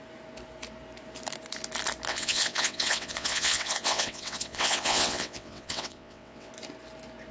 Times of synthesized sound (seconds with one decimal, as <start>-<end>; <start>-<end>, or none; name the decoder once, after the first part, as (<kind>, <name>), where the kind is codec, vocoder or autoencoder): 2.1-6.5 (vocoder, WaveNeXt)